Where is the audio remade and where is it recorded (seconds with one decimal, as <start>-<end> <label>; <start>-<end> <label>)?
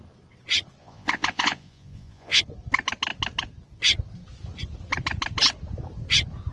0.0-0.8 recorded; 0.8-2.4 remade; 2.4-6.5 recorded